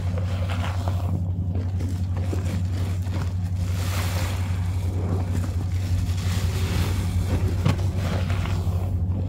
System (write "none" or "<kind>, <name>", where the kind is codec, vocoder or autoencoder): none